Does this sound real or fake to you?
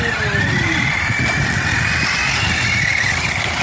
real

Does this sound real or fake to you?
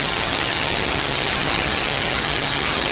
fake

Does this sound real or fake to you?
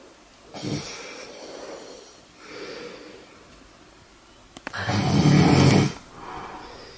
real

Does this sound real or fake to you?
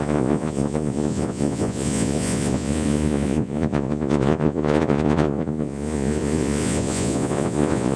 fake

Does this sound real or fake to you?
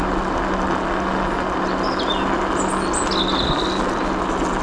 real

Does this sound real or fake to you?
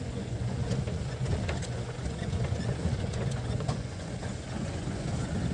fake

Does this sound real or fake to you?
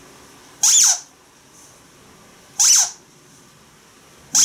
real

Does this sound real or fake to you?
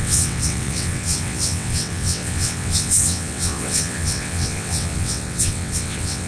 fake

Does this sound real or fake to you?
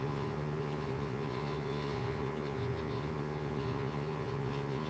fake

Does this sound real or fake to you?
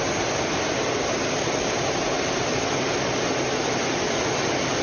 real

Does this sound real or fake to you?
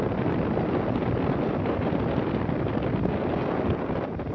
real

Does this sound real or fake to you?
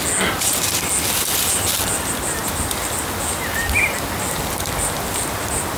real